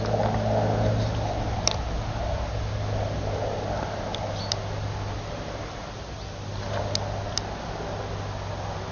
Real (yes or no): yes